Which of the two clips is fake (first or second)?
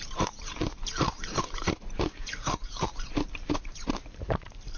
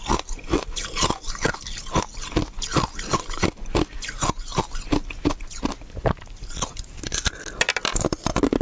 first